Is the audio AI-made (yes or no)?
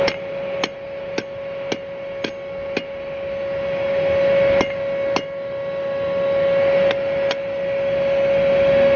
no